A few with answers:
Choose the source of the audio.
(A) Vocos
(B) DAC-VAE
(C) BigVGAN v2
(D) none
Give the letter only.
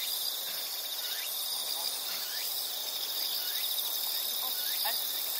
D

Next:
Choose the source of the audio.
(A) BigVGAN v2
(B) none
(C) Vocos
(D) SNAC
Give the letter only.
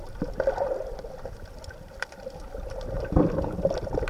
B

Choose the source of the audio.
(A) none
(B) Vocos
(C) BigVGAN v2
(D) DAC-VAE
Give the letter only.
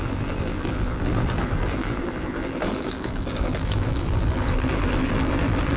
C